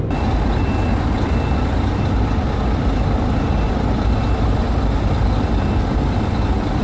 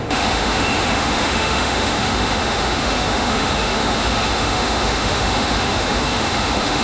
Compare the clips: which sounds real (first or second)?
first